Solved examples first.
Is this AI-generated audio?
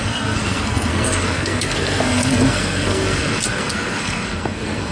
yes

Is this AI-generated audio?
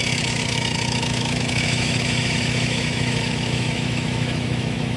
yes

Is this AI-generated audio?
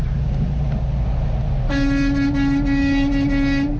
no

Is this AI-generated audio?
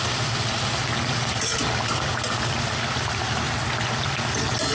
no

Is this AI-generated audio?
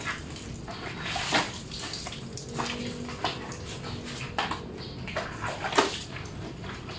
no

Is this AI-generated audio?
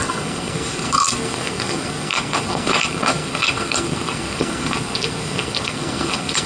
yes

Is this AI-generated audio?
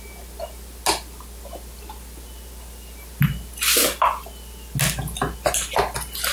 no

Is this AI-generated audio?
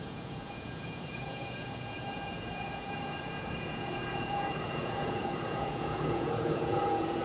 yes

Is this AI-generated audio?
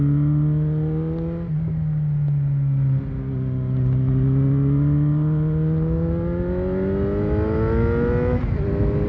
no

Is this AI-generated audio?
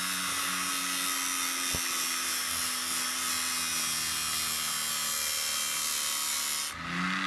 no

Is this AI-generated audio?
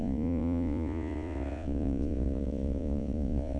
yes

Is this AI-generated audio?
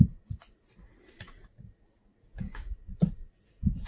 yes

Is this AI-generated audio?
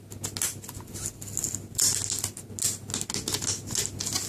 no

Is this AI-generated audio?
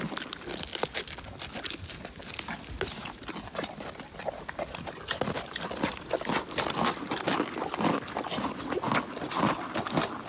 no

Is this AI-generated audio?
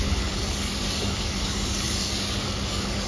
yes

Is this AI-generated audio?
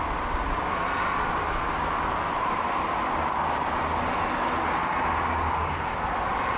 no